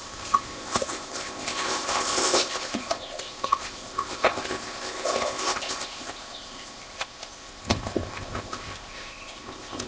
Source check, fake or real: fake